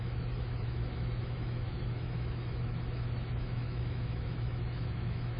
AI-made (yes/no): yes